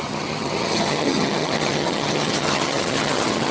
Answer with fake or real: fake